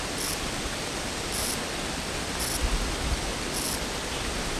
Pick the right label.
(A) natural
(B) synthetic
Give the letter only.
A